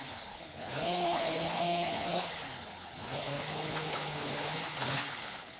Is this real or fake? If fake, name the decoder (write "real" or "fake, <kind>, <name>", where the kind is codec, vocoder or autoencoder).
fake, codec, HILCodec